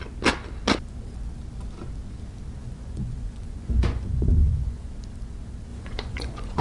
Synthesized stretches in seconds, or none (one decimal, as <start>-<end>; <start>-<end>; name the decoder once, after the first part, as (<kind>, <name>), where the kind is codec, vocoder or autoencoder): 2.6-4.9 (vocoder, Vocos); 5.7-6.6